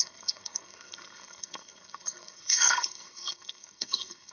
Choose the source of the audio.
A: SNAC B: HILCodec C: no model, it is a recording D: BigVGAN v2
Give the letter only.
A